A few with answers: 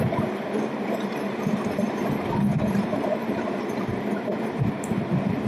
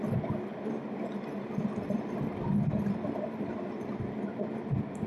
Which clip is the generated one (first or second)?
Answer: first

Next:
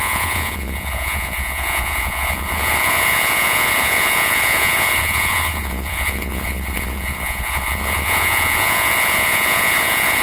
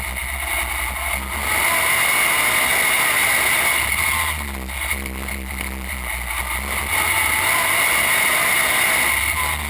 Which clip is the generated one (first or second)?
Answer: first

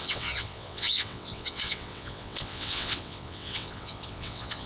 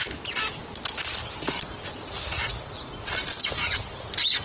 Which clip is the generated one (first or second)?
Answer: first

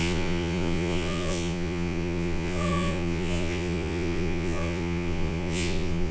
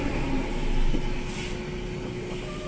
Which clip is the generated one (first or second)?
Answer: first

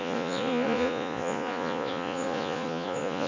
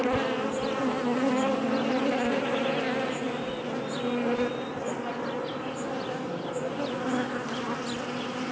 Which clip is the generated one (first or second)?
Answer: first